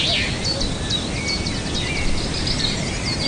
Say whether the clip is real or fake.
real